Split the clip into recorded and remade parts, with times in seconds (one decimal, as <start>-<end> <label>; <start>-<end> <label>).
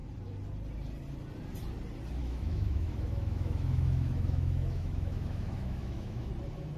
0.0-2.2 recorded; 2.2-6.3 remade; 6.3-6.8 recorded